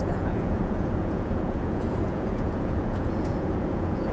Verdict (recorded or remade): remade